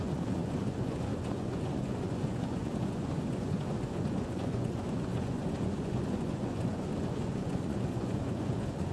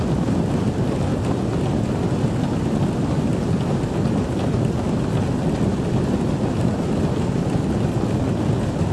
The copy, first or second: first